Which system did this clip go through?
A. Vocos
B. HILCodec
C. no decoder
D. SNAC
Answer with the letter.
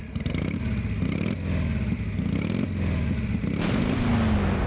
C